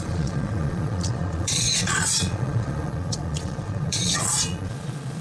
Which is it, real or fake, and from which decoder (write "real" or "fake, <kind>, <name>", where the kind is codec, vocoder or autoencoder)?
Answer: fake, vocoder, Vocos